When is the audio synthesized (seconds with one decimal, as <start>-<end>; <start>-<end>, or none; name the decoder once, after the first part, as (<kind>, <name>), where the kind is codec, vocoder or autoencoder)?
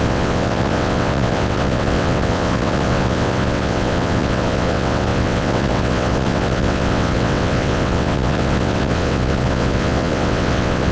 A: 0.0-10.9 (vocoder, WaveNeXt)